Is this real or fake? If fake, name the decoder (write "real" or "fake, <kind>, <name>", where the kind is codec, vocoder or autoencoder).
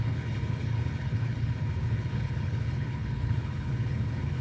fake, codec, HILCodec